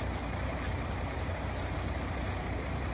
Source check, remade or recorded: remade